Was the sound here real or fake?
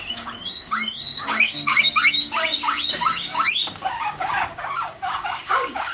fake